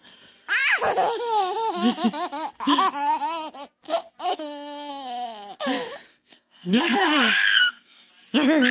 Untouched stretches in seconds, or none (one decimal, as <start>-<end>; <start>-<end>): 0.0-4.3; 4.9-6.1; 8.1-8.7